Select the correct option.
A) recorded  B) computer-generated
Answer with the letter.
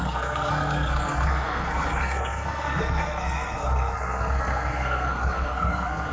B